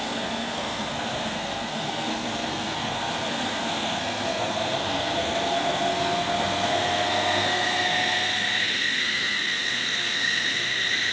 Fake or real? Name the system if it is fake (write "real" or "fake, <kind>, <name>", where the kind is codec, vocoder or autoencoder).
fake, codec, SNAC